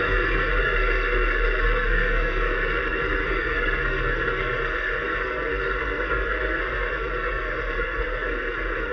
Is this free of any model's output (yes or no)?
no